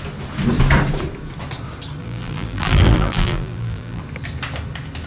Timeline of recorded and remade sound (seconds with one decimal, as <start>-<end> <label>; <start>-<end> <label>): 0.0-2.0 recorded; 2.0-4.0 remade; 4.0-5.1 recorded